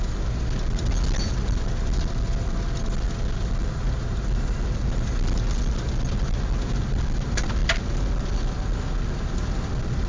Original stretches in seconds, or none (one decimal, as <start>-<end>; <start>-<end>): 0.0-10.1